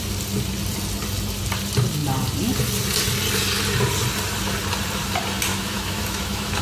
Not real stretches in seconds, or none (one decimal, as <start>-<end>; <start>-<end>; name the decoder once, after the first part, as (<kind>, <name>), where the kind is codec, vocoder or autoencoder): 5.5-6.6 (autoencoder, DAC-VAE)